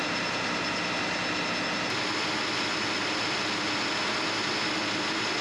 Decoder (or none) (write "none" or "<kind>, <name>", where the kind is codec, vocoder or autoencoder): none